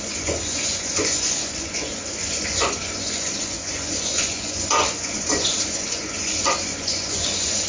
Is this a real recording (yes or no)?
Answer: no